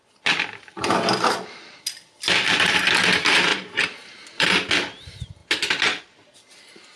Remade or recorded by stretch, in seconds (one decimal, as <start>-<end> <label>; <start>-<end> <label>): 0.0-3.5 recorded; 3.5-4.7 remade; 4.7-7.0 recorded

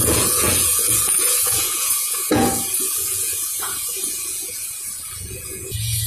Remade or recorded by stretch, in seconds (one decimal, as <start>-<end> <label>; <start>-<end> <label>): 0.0-6.1 remade

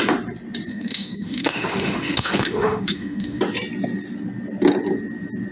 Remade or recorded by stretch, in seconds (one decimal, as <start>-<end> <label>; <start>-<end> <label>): 0.0-0.7 recorded; 0.7-3.4 remade; 3.4-5.5 recorded

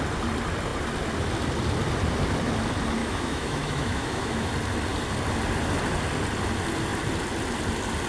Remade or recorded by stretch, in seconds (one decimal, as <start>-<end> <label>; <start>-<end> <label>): 0.0-3.0 recorded; 3.0-4.5 remade; 4.5-8.1 recorded

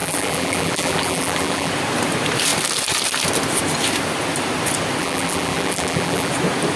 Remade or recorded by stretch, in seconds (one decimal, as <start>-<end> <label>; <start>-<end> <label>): 0.0-1.7 remade; 1.7-5.0 recorded; 5.0-6.3 remade; 6.3-6.8 recorded